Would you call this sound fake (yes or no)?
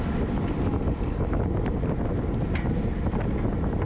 no